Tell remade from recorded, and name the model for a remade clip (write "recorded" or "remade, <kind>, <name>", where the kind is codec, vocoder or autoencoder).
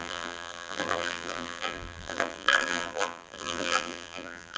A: remade, vocoder, BigVGAN v2